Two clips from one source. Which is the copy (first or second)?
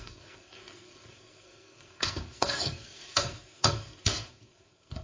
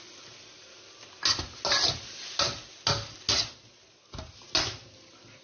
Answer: first